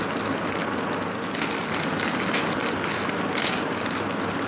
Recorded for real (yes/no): yes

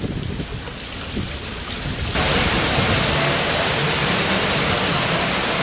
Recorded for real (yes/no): yes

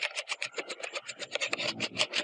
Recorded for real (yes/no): yes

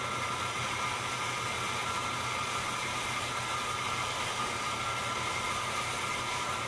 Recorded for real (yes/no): yes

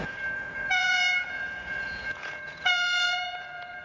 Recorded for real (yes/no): no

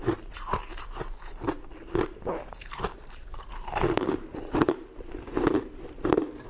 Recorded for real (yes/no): no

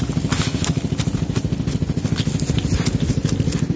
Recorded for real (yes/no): yes